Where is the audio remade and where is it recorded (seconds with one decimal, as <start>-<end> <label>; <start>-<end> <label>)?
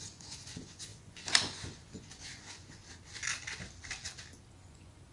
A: 0.0-2.8 remade; 2.8-4.5 recorded; 4.5-5.1 remade